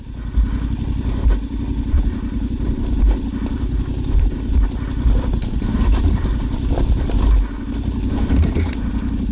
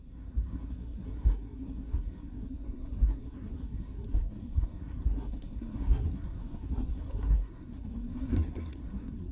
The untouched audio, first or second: first